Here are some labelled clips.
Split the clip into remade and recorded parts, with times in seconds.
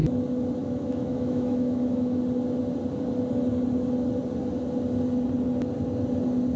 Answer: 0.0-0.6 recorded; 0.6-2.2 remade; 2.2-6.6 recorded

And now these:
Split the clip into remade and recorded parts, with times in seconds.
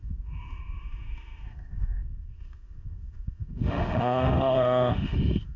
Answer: 0.0-5.6 remade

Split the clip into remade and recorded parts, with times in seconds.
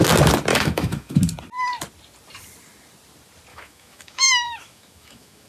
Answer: 0.0-0.5 recorded; 0.5-1.2 remade; 1.2-3.5 recorded; 3.5-5.5 remade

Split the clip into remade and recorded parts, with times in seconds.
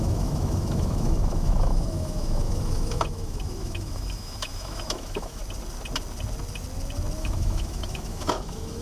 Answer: 0.0-5.4 remade; 5.4-7.2 recorded; 7.2-8.8 remade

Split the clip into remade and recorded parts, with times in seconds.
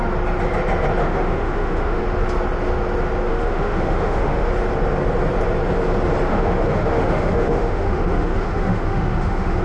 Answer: 0.0-1.0 recorded; 1.0-2.0 remade; 2.0-3.3 recorded; 3.3-4.5 remade; 4.5-6.3 recorded; 6.3-9.6 remade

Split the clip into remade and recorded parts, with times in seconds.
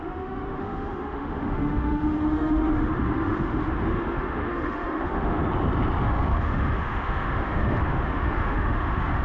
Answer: 0.0-5.4 remade; 5.4-6.0 recorded; 6.0-9.2 remade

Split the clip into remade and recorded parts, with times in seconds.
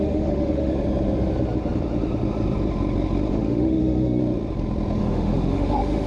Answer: 0.0-0.7 remade; 0.7-3.3 recorded; 3.3-4.2 remade; 4.2-5.0 recorded; 5.0-6.1 remade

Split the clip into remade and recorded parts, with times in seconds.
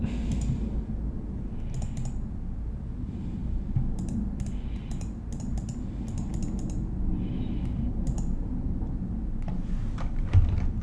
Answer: 0.0-10.8 recorded